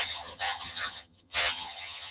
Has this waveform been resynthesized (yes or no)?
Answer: yes